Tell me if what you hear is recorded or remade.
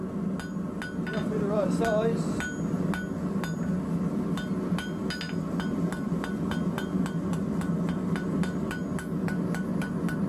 recorded